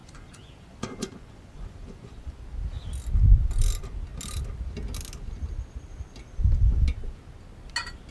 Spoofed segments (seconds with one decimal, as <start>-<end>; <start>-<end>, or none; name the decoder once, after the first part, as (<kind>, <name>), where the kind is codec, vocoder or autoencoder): 0.0-2.4 (vocoder, Vocos)